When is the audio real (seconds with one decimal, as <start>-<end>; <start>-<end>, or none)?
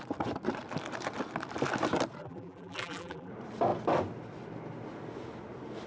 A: 0.0-2.2; 3.3-5.9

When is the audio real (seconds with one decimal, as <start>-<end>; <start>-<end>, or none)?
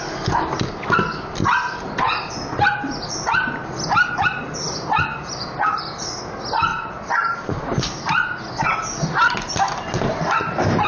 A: 0.0-6.7; 8.4-10.1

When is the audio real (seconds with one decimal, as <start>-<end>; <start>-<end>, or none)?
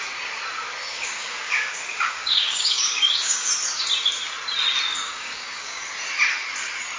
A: 0.0-0.8; 3.5-4.9; 5.8-7.0